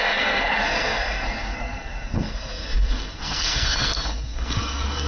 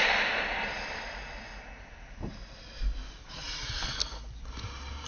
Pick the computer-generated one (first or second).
first